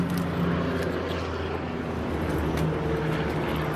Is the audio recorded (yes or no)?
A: yes